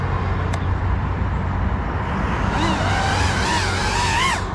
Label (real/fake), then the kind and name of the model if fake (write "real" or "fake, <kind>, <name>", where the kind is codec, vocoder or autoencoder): real